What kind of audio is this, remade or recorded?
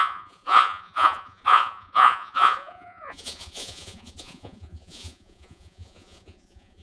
remade